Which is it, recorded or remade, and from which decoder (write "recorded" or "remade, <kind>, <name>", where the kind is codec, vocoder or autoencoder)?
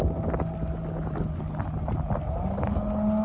recorded